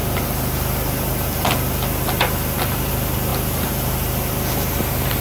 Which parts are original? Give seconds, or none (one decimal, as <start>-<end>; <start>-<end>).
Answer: 2.9-3.3